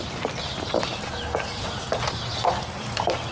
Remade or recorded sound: recorded